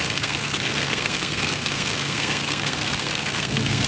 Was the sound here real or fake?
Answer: fake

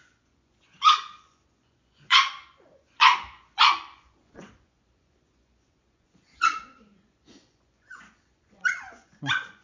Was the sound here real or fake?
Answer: fake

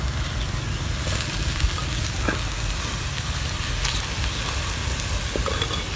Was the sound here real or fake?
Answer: real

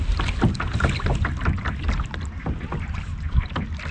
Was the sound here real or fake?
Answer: real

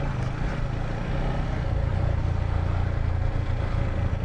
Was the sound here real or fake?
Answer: real